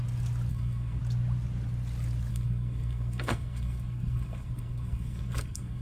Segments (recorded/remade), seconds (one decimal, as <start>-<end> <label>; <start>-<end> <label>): 0.0-0.5 recorded; 0.5-1.0 remade; 1.0-2.3 recorded; 2.3-5.8 remade